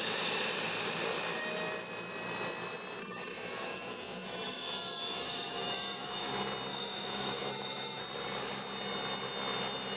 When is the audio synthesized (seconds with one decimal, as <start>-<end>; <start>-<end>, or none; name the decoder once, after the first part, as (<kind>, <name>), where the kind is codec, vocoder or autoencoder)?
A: 3.0-6.3 (autoencoder, DAC-VAE); 6.7-8.0